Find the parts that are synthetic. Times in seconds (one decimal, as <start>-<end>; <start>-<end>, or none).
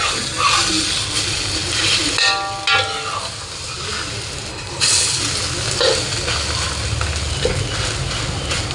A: 4.5-5.2